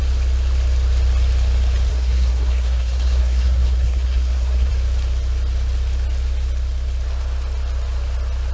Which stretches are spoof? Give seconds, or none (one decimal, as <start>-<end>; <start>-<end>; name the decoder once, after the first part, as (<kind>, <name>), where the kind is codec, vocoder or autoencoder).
1.9-4.7 (codec, SNAC)